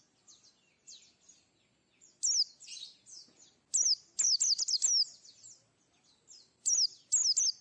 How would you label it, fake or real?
real